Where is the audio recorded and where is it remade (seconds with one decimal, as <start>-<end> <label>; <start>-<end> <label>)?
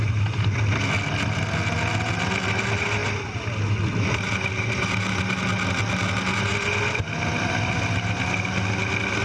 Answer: 0.0-9.2 recorded